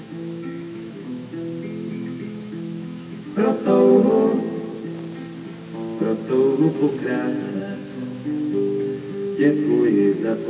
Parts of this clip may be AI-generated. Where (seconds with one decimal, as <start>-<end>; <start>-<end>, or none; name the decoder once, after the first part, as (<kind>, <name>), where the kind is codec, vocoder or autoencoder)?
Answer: 0.0-1.3 (autoencoder, DAC-VAE); 1.9-3.9; 7.6-10.5